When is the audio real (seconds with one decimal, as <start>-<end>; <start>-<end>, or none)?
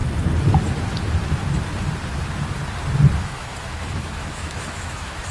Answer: 0.0-3.2